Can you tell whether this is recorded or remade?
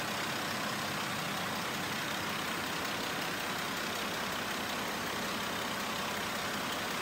recorded